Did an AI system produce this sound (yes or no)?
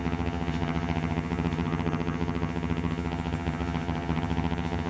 yes